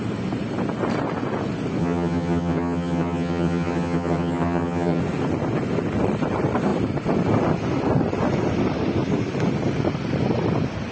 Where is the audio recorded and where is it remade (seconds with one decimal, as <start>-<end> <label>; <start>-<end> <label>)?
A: 0.0-1.8 recorded; 1.8-5.0 remade; 5.0-10.9 recorded